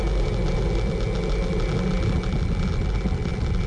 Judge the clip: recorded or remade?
recorded